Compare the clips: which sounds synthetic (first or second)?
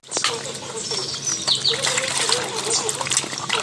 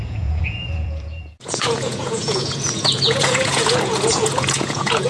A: second